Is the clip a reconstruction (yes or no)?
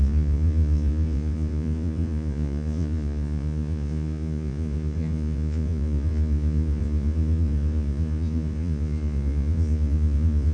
yes